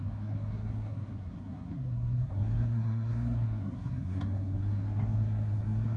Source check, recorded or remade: remade